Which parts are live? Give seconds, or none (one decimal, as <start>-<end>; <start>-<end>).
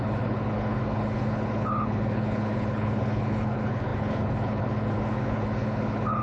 none